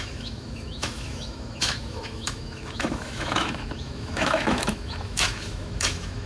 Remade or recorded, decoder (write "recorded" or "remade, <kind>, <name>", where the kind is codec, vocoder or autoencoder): remade, autoencoder, DAC-VAE